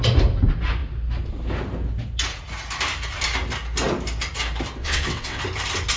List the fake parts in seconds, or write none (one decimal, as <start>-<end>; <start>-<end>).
4.8-5.4